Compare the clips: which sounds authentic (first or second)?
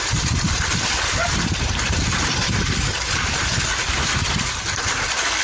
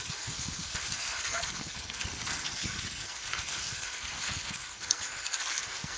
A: first